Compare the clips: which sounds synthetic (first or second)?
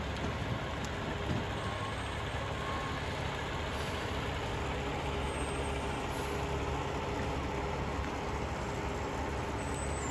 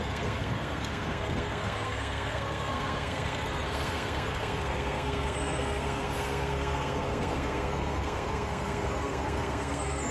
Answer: second